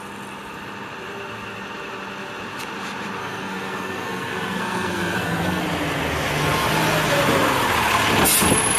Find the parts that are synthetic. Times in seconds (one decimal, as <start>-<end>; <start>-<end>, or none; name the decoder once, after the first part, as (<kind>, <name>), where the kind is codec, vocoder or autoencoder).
3.2-5.6 (codec, SNAC)